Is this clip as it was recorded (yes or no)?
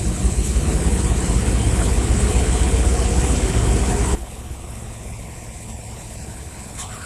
no